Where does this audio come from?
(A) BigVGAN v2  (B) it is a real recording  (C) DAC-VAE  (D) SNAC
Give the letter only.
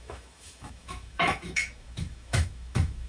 C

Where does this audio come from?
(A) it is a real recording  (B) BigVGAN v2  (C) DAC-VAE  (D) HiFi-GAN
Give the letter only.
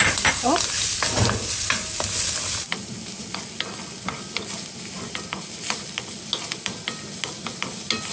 A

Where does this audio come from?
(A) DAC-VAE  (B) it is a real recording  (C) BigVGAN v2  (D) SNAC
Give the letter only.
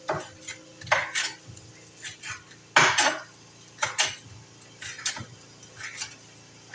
B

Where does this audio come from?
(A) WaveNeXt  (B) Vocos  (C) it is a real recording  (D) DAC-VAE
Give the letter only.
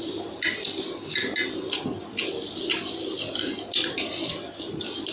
C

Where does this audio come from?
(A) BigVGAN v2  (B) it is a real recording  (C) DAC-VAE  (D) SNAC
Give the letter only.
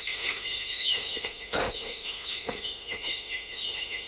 C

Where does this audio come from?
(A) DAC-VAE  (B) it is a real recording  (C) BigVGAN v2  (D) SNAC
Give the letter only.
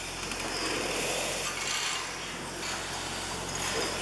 B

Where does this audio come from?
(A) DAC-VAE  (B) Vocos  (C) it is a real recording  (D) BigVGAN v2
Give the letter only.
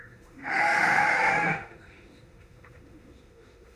A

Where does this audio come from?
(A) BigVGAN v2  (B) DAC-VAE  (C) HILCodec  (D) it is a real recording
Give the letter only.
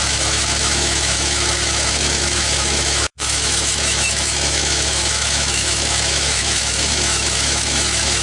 B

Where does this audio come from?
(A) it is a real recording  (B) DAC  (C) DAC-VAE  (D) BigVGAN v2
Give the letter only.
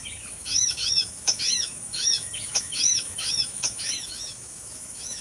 C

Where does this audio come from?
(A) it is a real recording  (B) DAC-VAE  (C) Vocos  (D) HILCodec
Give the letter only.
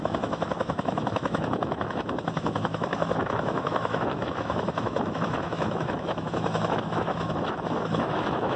B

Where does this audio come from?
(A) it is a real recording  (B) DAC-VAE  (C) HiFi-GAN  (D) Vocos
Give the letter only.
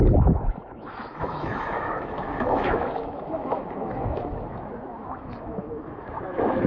B